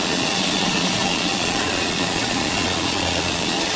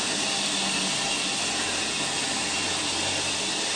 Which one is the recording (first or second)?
second